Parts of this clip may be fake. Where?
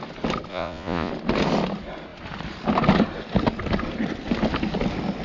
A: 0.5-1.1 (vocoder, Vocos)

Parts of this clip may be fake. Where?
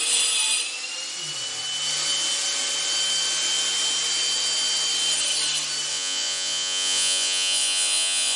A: 5.9-8.4 (vocoder, Vocos)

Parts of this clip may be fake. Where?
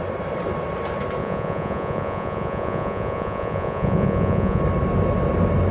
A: 1.2-4.6 (vocoder, Vocos)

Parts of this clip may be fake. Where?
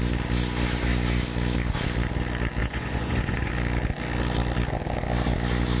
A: 2.6-3.5 (vocoder, Vocos)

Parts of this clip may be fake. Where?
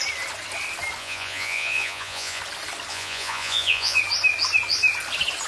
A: 1.0-2.4 (vocoder, Vocos); 2.9-4.0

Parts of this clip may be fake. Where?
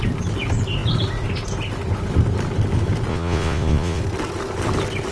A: 3.1-4.0 (vocoder, Vocos)